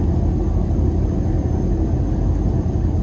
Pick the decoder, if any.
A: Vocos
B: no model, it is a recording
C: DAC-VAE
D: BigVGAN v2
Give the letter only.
B